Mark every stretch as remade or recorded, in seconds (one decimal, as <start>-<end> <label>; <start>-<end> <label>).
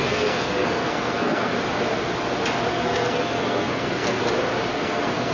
0.0-1.5 remade; 1.5-2.7 recorded; 2.7-4.2 remade; 4.2-4.7 recorded; 4.7-5.3 remade